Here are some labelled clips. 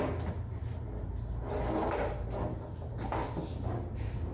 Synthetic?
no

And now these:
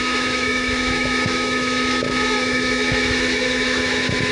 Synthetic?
yes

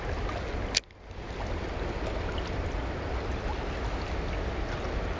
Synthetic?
no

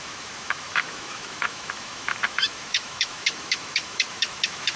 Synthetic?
yes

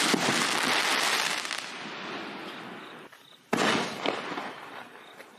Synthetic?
no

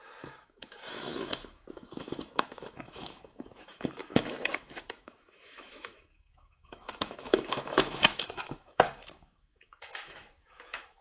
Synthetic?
yes